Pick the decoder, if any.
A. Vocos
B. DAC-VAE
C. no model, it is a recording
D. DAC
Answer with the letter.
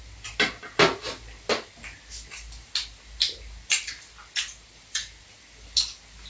C